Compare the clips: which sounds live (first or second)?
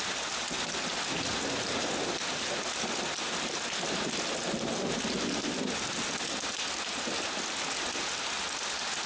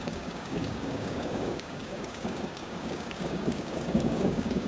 first